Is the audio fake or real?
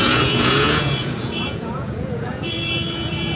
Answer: fake